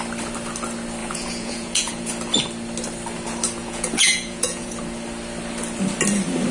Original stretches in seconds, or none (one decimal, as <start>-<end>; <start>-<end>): 0.0-1.0; 2.1-3.6; 4.7-6.5